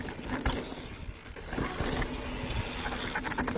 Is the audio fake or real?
real